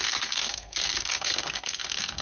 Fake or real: fake